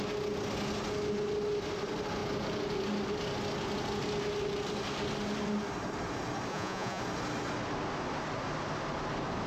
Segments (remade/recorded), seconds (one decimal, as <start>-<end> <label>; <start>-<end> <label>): 0.0-6.5 recorded; 6.5-7.0 remade; 7.0-9.5 recorded

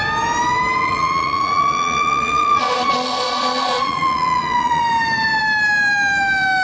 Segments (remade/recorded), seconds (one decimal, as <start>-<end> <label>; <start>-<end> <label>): 0.0-0.8 recorded; 0.8-4.8 remade; 4.8-6.6 recorded